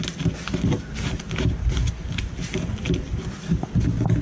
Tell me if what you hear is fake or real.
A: real